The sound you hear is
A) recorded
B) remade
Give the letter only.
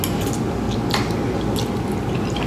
A